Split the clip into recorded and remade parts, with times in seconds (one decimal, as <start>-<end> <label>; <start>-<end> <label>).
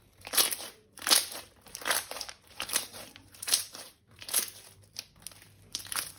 0.0-4.4 remade; 4.4-5.7 recorded; 5.7-6.2 remade